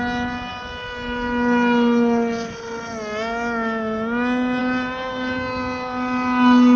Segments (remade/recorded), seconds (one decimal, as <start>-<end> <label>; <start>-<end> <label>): 0.0-6.8 recorded